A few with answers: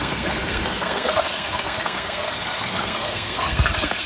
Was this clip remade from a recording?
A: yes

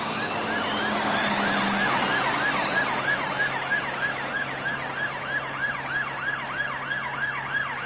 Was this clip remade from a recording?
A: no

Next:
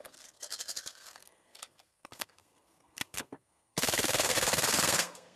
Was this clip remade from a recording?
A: yes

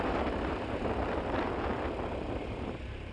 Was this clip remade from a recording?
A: yes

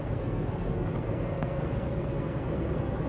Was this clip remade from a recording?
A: yes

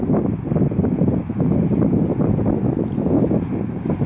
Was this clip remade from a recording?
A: no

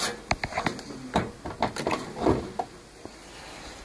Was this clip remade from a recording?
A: no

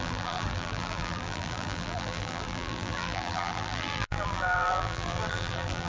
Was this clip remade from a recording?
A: yes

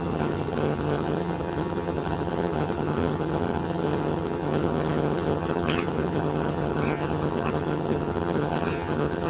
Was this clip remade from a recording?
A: yes